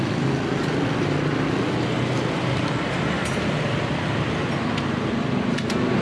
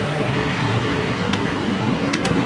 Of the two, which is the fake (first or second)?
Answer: second